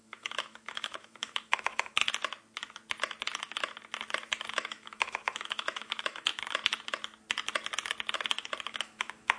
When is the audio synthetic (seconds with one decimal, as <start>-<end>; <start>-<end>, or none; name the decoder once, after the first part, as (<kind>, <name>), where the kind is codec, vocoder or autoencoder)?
0.0-2.0 (autoencoder, DAC-VAE); 4.5-6.3; 8.7-9.4